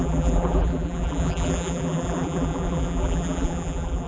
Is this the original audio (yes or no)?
no